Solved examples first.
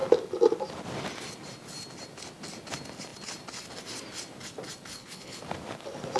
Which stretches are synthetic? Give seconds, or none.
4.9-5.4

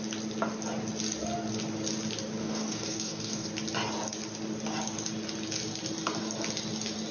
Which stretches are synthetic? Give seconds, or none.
2.4-3.5

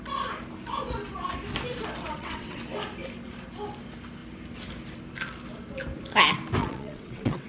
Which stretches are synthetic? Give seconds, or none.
2.0-2.6; 6.6-7.5

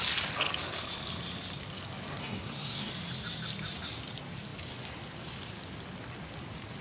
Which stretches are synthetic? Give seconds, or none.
2.2-2.9

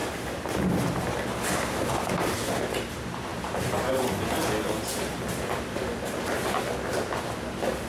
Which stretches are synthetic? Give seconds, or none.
none

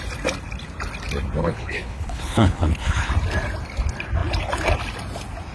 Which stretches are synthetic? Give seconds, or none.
1.4-3.1

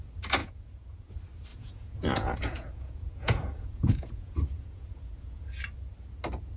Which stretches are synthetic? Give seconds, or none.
0.4-1.1; 1.5-5.5

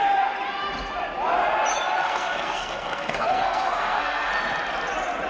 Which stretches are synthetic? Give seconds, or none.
2.0-4.3